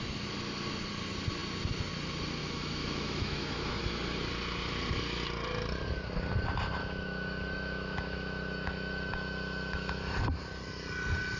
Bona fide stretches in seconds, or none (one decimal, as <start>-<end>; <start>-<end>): 0.0-2.4; 3.8-6.8; 10.0-11.4